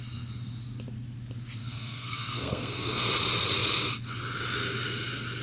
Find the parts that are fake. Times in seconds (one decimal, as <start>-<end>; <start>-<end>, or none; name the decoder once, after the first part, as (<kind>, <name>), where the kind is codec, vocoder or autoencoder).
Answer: 1.6-3.1 (codec, SNAC)